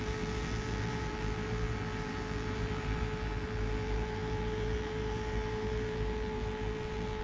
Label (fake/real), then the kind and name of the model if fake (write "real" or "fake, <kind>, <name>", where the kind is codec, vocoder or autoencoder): fake, vocoder, BigVGAN v2